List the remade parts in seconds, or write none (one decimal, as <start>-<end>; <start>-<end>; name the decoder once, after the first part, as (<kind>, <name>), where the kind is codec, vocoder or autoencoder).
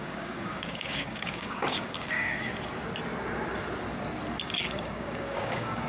0.0-2.5 (codec, DAC); 4.4-5.9